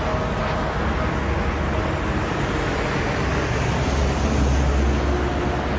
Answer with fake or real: real